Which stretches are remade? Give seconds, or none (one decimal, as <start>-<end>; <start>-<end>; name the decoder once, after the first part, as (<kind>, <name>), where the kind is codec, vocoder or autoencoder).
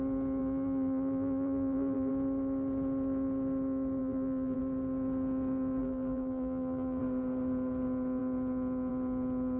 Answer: 0.4-2.1 (vocoder, BigVGAN v2); 4.0-4.6; 5.8-7.0